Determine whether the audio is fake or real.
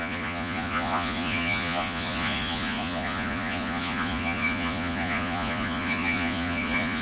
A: fake